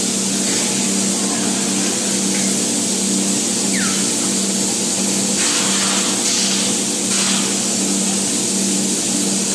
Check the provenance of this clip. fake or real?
real